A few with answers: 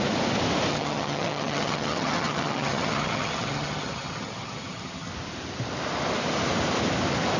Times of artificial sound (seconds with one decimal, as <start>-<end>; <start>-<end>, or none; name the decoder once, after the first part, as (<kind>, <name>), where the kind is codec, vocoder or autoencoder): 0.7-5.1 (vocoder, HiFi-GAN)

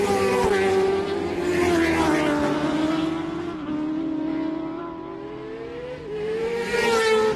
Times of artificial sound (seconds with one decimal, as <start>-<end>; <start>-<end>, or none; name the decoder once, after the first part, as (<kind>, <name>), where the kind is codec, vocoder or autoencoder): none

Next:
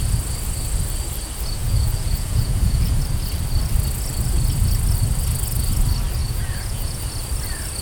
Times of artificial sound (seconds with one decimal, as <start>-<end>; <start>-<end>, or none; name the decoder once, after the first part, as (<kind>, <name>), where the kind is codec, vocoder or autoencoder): 1.6-3.0 (vocoder, Vocos); 6.2-7.0